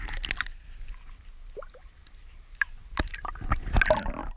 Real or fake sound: real